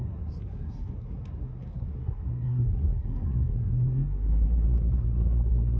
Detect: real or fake fake